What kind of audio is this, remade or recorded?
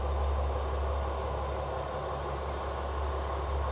recorded